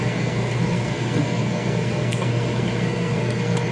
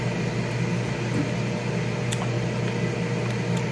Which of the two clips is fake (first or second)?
first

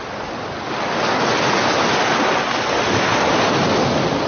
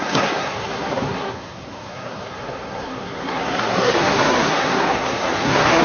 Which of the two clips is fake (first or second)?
second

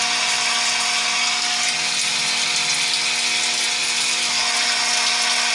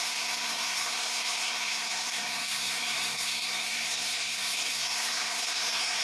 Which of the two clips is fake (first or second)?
second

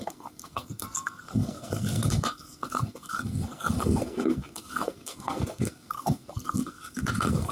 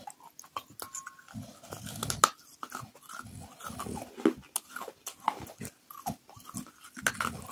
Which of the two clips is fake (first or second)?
first